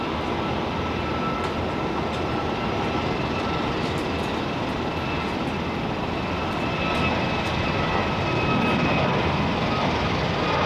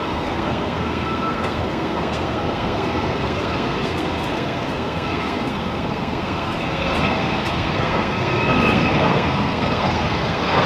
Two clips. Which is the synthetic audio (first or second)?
second